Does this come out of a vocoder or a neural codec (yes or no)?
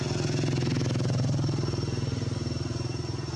no